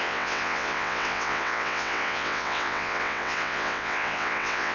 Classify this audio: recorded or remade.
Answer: remade